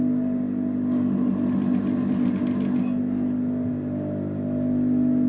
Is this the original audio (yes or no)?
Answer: yes